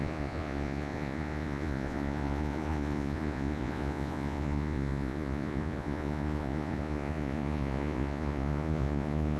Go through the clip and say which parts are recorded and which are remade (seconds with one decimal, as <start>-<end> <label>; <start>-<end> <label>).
0.0-9.4 remade